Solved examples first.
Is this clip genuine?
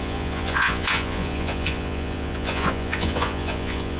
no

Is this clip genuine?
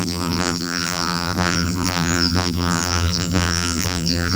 no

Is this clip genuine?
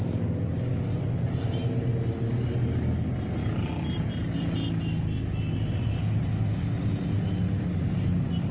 yes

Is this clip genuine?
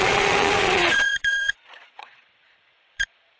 no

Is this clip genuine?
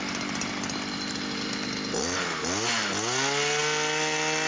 yes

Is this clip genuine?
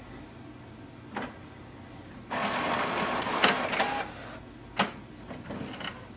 yes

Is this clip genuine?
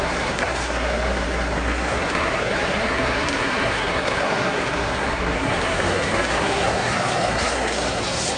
no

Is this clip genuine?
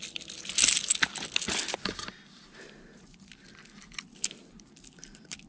yes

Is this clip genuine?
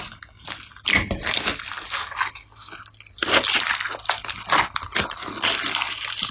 yes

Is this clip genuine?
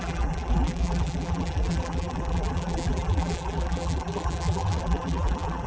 no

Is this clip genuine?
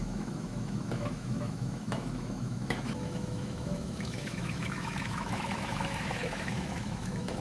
no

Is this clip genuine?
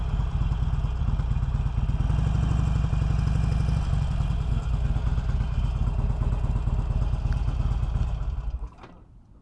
yes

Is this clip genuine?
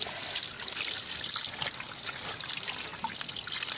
yes